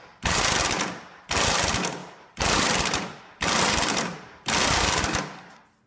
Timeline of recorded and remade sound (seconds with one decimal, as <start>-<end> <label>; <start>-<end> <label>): 0.0-2.0 recorded; 2.0-5.0 remade; 5.0-5.9 recorded